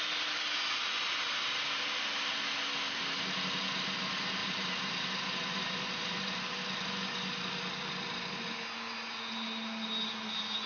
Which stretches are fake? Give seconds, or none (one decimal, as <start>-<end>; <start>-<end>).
none